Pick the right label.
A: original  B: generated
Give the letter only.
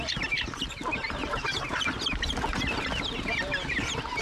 A